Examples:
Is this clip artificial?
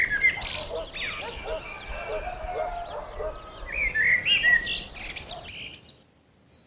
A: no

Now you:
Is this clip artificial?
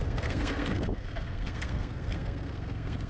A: yes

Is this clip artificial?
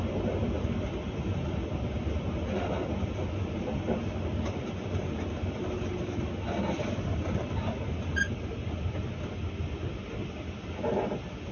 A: no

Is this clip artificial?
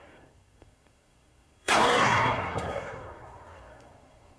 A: yes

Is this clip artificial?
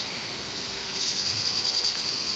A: yes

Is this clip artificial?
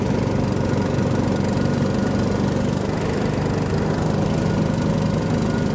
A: no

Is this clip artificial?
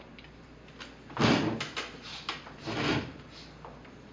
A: no